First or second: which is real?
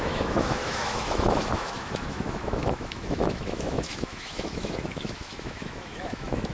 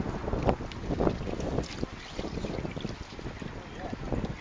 second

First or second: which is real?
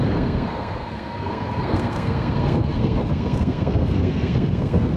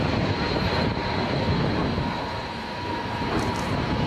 second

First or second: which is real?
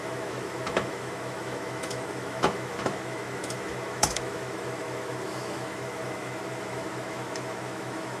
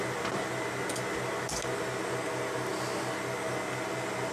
second